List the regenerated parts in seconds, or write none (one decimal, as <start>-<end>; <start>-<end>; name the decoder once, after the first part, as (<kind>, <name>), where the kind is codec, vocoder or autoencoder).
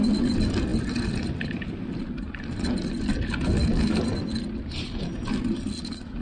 none